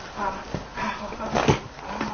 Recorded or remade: recorded